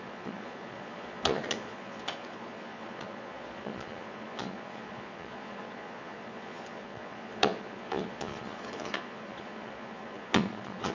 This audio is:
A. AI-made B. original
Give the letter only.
A